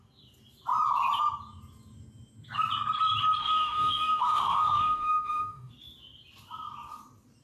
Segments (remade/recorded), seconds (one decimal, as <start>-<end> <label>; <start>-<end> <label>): 0.0-3.4 recorded; 3.4-5.7 remade; 5.7-7.4 recorded

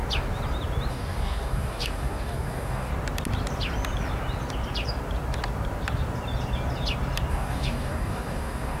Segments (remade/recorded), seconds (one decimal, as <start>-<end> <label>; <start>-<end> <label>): 0.0-0.9 recorded; 0.9-2.9 remade; 2.9-7.3 recorded; 7.3-8.8 remade

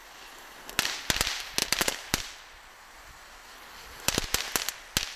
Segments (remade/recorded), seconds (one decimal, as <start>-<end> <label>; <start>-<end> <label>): 0.0-1.6 recorded; 1.6-4.7 remade; 4.7-5.2 recorded

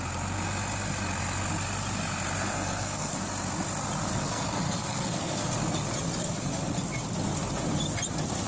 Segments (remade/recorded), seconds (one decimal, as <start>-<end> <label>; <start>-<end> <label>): 0.0-2.4 recorded; 2.4-3.3 remade; 3.3-4.1 recorded; 4.1-5.5 remade; 5.5-8.5 recorded

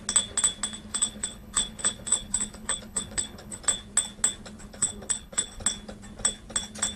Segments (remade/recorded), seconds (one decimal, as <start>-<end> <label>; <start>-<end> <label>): 0.0-0.9 recorded; 0.9-3.6 remade; 3.6-4.7 recorded; 4.7-5.6 remade; 5.6-7.0 recorded

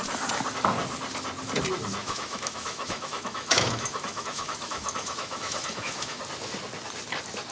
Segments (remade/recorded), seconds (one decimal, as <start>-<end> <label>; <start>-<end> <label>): 0.0-2.0 recorded; 2.0-6.2 remade; 6.2-7.5 recorded

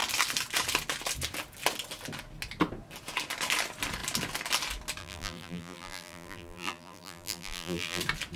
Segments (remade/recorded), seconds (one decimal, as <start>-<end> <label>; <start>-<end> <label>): 0.0-5.0 recorded; 5.0-8.0 remade; 8.0-8.4 recorded

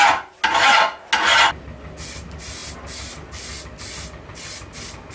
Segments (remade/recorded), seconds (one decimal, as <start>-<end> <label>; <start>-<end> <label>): 0.0-5.1 recorded